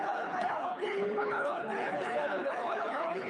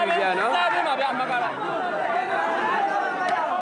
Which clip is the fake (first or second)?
first